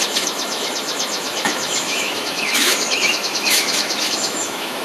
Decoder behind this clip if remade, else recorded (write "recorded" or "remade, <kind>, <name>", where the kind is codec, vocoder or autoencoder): remade, autoencoder, DAC-VAE